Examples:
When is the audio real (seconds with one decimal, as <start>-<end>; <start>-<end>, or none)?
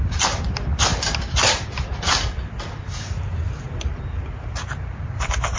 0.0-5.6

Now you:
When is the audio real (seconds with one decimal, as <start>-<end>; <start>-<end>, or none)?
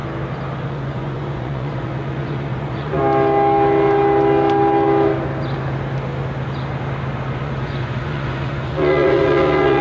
0.0-0.7; 3.0-7.4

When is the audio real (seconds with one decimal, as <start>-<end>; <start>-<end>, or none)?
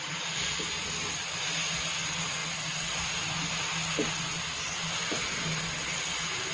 0.0-6.5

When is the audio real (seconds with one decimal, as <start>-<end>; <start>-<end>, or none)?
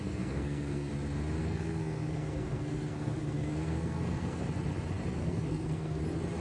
0.9-1.4; 4.4-5.2; 6.0-6.4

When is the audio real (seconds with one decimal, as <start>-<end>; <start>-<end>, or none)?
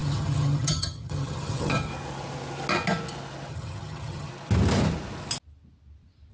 1.9-3.5; 4.3-6.3